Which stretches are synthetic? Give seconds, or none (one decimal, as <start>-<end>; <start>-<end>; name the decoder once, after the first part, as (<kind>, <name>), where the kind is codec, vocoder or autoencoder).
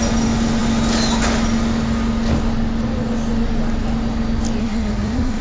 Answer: 4.6-5.4 (codec, SNAC)